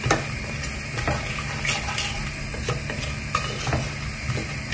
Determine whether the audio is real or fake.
real